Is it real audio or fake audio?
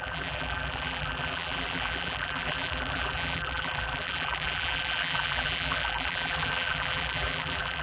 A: fake